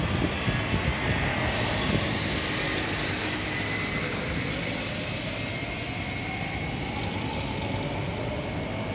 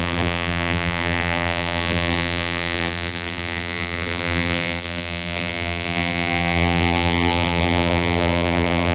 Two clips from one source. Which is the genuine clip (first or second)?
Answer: first